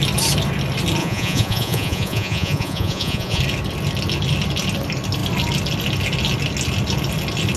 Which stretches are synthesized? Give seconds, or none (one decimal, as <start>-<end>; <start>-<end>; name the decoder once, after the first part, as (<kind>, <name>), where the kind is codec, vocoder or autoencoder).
1.0-3.4 (vocoder, Vocos)